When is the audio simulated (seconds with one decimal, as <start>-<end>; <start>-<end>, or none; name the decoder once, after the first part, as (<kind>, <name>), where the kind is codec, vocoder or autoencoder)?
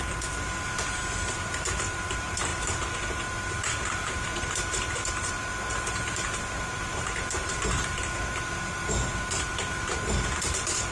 0.0-10.9 (vocoder, BigVGAN v2)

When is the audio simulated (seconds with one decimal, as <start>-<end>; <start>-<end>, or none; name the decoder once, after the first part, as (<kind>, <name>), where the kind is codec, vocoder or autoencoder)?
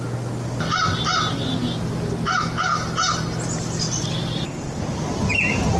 2.7-4.8 (vocoder, BigVGAN v2)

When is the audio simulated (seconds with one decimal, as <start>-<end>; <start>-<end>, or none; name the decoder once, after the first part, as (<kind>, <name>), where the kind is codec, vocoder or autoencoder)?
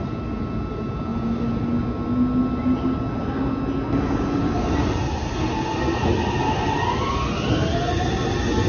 4.4-5.1 (vocoder, BigVGAN v2)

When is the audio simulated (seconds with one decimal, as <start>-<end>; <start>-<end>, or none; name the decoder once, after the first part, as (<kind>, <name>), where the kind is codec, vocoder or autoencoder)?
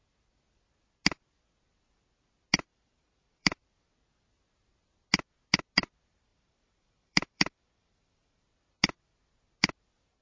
2.7-3.7 (vocoder, BigVGAN v2); 6.3-8.4